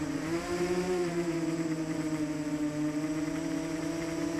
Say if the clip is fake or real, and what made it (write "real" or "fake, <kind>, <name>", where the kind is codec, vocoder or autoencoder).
fake, vocoder, BigVGAN v2